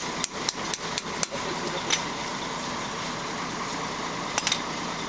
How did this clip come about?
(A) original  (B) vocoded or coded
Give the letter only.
A